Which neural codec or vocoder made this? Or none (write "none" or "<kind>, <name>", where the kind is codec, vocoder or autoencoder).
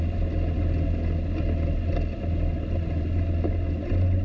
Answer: none